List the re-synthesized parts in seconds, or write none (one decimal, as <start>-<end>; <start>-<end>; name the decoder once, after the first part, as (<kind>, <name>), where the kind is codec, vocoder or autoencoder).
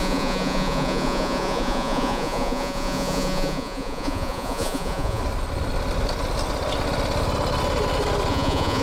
0.0-5.2 (vocoder, Vocos); 8.3-8.8